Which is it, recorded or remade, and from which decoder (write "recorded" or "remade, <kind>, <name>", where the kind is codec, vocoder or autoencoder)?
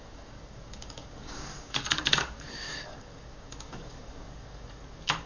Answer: remade, codec, DAC